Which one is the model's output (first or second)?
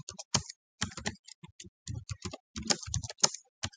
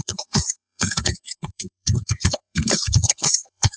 second